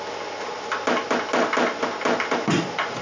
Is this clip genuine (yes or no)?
yes